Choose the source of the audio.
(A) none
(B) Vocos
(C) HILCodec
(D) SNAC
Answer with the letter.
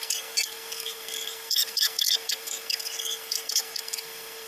D